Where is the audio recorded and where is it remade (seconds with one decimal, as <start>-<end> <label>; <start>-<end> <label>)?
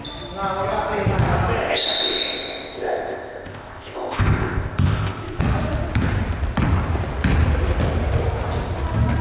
0.0-1.6 recorded; 1.6-5.4 remade; 5.4-9.2 recorded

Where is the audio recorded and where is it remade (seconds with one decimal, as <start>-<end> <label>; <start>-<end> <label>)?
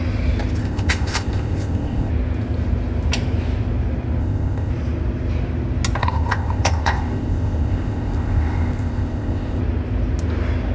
0.0-0.6 recorded; 0.6-2.1 remade; 2.1-4.2 recorded; 4.2-4.7 remade; 4.7-6.0 recorded; 6.0-9.6 remade; 9.6-10.7 recorded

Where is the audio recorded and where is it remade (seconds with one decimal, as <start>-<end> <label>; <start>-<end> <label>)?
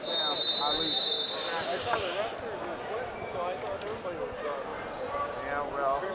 0.0-6.1 recorded